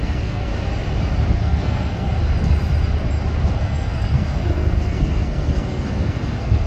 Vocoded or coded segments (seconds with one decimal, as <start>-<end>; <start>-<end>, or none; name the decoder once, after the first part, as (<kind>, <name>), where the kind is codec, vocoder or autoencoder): 0.0-0.5 (codec, SNAC); 1.3-2.2; 3.5-6.7